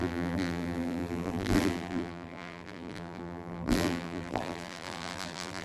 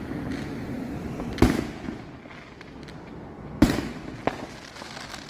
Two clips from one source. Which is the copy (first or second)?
first